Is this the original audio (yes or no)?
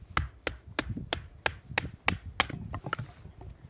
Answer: yes